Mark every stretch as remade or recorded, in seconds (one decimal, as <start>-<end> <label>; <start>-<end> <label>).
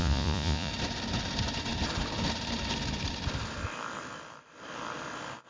0.0-0.7 remade; 0.7-5.5 recorded